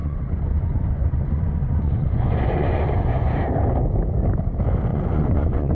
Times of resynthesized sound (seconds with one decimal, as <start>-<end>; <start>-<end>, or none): 0.0-3.4; 4.9-5.7